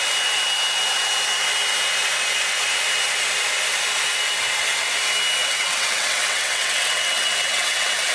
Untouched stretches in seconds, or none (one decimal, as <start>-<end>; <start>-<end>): 0.0-5.4